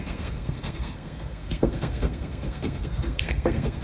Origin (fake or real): fake